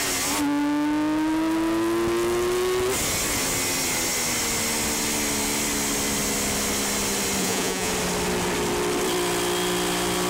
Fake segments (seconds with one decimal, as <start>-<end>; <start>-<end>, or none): 7.4-7.9